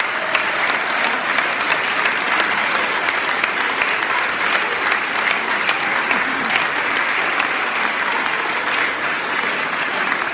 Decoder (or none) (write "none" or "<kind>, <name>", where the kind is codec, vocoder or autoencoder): none